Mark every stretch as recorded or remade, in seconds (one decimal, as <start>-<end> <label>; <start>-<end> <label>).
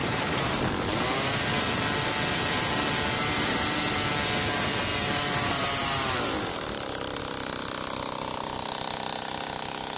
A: 0.0-0.6 remade; 0.6-4.9 recorded; 4.9-7.2 remade; 7.2-10.0 recorded